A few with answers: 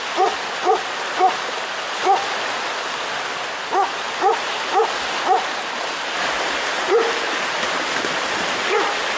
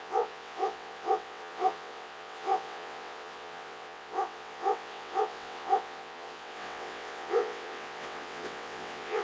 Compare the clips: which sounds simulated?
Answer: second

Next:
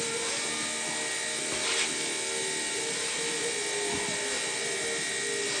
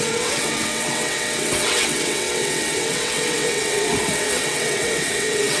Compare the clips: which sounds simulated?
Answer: second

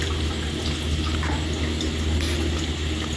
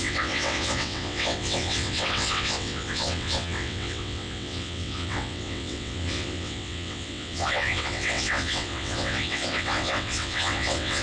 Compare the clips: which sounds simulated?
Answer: second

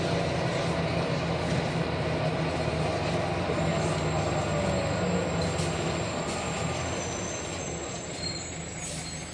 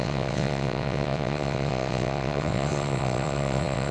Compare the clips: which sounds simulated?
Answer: second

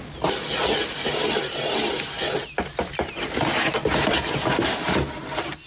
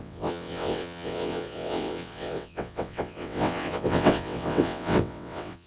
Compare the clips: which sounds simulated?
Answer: second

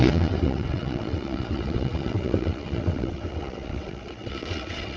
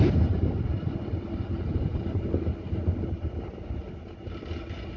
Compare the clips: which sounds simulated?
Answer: first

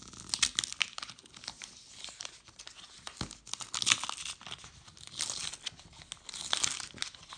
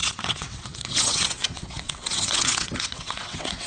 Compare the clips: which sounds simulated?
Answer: second